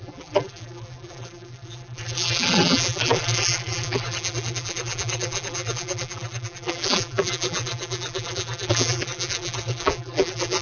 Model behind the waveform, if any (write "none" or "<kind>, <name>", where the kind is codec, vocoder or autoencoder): vocoder, BigVGAN v2